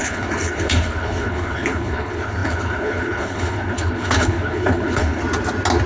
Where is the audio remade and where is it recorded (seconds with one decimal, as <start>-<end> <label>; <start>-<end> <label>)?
0.0-5.2 remade; 5.2-5.9 recorded